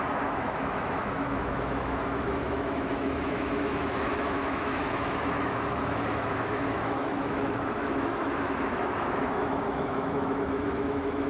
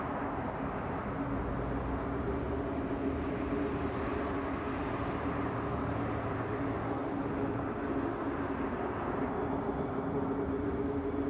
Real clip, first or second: second